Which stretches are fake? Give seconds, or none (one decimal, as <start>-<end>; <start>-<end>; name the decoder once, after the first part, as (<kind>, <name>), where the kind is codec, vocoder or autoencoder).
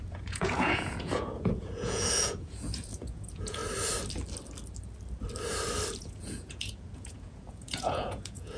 0.0-3.6 (vocoder, Vocos); 6.0-8.6